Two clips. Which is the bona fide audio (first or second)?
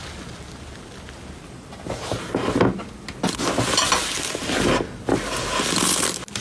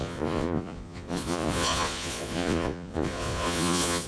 first